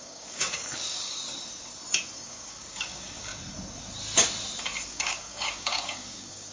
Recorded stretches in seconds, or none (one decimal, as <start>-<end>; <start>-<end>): 1.2-2.1; 3.3-4.9